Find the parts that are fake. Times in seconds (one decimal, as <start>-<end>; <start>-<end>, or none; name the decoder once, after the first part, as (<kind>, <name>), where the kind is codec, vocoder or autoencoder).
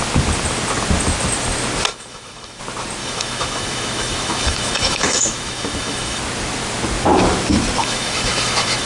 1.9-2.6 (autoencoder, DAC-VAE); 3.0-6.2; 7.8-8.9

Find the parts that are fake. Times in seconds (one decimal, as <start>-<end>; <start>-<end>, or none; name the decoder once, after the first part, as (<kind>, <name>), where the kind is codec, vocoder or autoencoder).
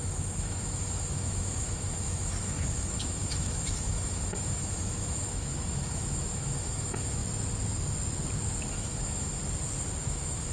0.0-7.2 (autoencoder, DAC-VAE); 8.7-9.4; 10.0-10.5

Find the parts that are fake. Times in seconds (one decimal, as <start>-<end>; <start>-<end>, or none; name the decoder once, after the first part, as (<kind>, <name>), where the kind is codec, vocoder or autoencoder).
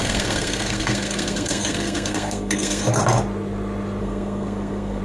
0.0-3.0 (codec, SNAC); 4.0-5.0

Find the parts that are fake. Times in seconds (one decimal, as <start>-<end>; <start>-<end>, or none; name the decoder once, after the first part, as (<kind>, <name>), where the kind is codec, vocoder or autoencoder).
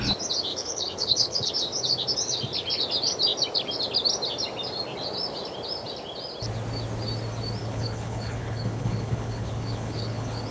0.5-1.5 (codec, HILCodec); 7.6-10.5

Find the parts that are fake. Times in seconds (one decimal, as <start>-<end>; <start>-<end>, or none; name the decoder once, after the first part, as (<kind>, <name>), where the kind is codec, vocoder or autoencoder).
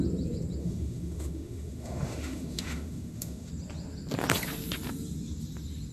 0.6-3.5 (autoencoder, DAC-VAE)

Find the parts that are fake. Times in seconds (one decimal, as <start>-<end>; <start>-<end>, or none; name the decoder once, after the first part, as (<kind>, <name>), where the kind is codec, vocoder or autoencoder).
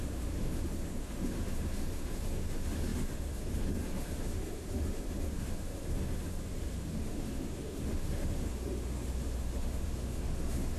0.0-10.8 (autoencoder, DAC-VAE)